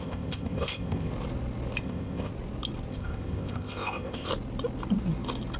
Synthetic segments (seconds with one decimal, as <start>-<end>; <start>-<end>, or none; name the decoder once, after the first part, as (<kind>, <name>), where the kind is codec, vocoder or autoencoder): 0.0-1.1 (codec, ZipCodec); 1.8-2.3; 2.9-4.3